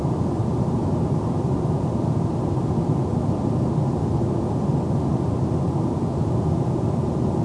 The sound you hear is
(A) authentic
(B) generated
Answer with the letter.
A